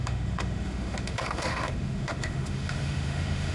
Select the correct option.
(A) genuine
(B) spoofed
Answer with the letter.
B